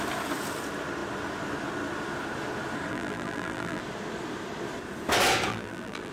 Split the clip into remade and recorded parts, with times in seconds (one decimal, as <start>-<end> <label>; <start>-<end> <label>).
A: 0.0-2.9 recorded; 2.9-3.8 remade; 3.8-5.5 recorded; 5.5-6.1 remade

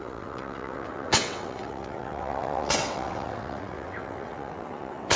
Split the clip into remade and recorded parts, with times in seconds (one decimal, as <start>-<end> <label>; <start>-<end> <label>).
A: 0.0-5.2 remade

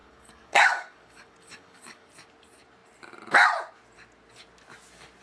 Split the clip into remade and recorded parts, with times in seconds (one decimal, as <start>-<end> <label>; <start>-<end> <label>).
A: 0.0-2.1 remade; 2.1-5.2 recorded